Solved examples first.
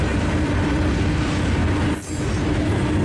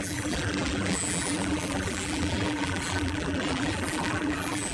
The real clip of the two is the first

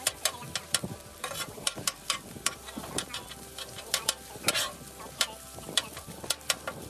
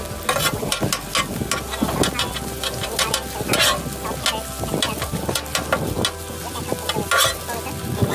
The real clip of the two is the second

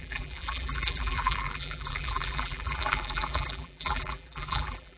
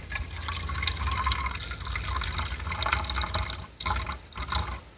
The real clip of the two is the second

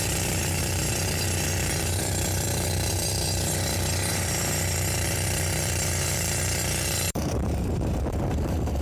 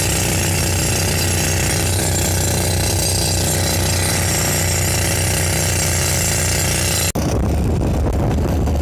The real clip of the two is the second